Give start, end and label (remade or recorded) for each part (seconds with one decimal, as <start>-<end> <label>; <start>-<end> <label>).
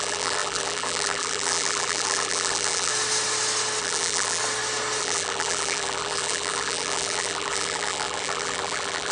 0.0-2.9 remade; 2.9-3.8 recorded; 3.8-4.4 remade; 4.4-5.0 recorded; 5.0-9.1 remade